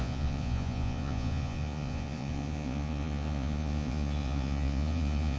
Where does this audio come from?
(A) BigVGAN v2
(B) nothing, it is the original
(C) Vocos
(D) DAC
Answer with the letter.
C